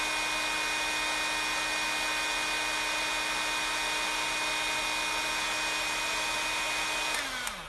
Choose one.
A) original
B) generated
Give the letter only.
A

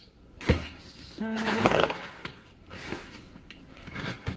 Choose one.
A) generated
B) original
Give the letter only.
A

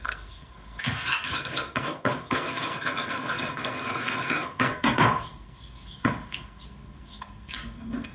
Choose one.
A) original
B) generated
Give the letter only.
B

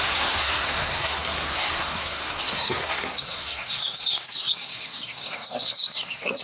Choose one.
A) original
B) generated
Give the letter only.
B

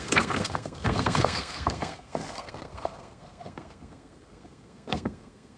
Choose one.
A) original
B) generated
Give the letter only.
B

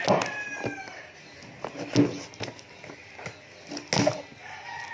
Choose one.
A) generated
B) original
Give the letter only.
B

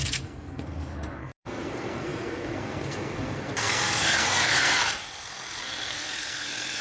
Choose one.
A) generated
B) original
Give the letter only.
A